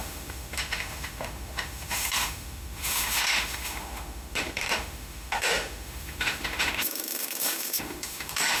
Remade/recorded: remade